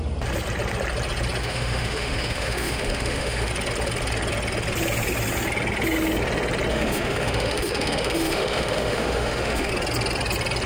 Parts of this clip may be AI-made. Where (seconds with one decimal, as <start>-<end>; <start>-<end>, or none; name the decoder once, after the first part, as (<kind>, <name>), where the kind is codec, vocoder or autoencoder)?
1.4-3.5 (autoencoder, DAC-VAE); 6.7-9.7